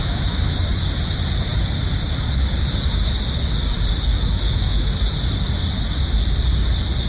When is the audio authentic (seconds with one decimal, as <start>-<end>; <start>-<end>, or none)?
0.7-4.1; 4.9-7.1